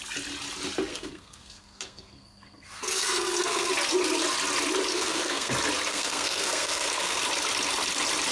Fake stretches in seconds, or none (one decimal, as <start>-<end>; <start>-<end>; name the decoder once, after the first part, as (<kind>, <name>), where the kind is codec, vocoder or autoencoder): 0.9-3.7 (codec, SNAC); 4.9-5.5; 5.9-7.2

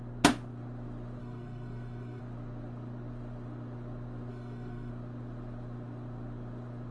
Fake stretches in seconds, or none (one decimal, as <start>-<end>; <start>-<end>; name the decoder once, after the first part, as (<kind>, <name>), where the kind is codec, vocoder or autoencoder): 1.2-2.2 (codec, SNAC); 4.3-4.9